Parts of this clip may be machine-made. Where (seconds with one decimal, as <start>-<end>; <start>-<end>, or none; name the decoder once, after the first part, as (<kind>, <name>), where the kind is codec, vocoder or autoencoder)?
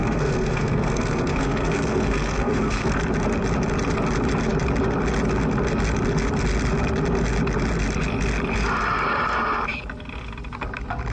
0.0-2.9 (codec, SNAC)